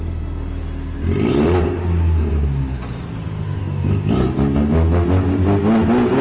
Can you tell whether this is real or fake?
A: real